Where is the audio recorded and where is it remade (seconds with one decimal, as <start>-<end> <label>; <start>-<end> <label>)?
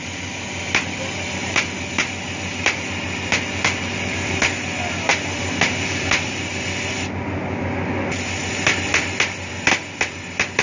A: 0.0-10.6 recorded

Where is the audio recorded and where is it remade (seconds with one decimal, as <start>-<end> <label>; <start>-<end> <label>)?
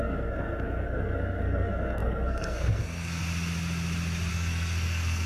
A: 0.0-3.2 remade; 3.2-4.3 recorded; 4.3-5.3 remade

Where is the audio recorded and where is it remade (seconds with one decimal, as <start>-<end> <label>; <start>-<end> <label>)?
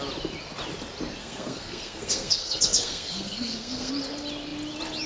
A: 0.0-1.2 recorded; 1.2-3.9 remade; 3.9-5.1 recorded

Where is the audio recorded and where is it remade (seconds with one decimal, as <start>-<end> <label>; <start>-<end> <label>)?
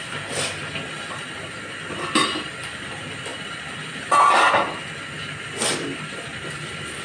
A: 0.0-7.0 recorded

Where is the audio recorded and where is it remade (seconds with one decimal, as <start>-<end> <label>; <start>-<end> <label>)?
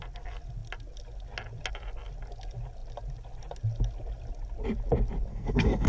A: 0.0-5.3 recorded; 5.3-5.9 remade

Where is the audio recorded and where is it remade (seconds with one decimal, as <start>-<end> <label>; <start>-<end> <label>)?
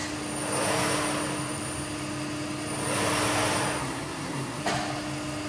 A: 0.0-3.8 recorded; 3.8-4.6 remade; 4.6-5.5 recorded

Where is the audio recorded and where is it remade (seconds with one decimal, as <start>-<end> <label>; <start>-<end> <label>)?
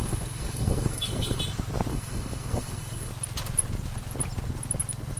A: 0.0-1.4 remade; 1.4-1.9 recorded; 1.9-3.1 remade; 3.1-5.2 recorded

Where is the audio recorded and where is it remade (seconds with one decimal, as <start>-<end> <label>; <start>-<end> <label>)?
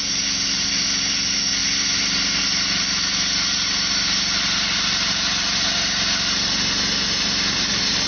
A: 0.0-8.1 recorded